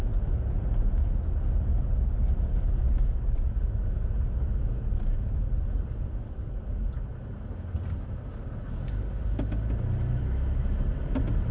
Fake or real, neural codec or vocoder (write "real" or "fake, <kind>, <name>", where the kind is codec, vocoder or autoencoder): real